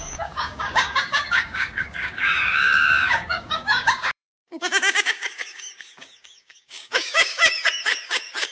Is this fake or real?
fake